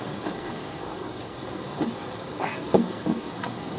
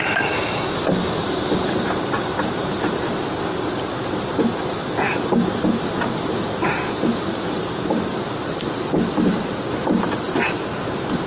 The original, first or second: second